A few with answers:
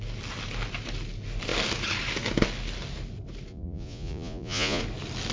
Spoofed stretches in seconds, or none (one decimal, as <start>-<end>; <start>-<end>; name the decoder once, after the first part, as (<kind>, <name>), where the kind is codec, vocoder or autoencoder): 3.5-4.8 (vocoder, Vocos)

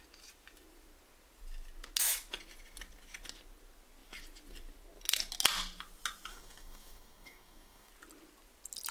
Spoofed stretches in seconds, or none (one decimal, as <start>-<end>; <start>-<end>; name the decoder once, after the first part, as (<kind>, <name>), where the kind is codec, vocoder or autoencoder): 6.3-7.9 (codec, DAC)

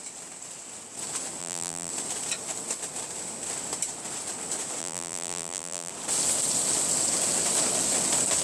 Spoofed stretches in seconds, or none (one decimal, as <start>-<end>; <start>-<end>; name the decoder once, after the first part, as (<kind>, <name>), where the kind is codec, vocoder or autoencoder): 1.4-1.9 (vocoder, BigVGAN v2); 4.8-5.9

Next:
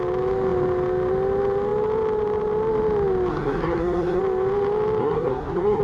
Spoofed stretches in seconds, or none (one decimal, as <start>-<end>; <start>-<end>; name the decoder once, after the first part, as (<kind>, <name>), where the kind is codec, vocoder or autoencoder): 3.3-4.2 (codec, SNAC); 5.0-5.8